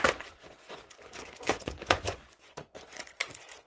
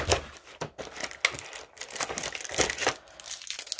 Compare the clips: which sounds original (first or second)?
second